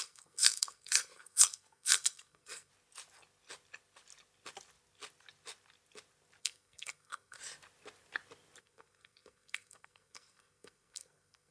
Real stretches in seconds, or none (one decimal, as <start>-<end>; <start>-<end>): 2.7-6.4; 7.4-8.6